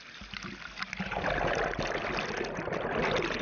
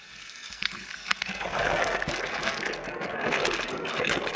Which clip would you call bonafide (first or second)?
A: first